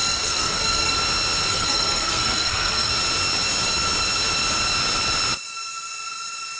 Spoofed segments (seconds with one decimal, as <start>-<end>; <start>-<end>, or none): 0.0-0.9; 1.5-2.9